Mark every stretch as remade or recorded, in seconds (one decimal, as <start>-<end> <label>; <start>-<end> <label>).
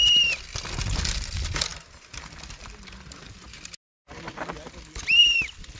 0.0-5.8 recorded